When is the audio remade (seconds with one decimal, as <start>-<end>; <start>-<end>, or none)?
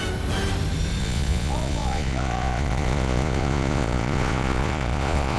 1.0-5.4